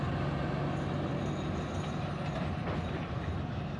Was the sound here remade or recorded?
recorded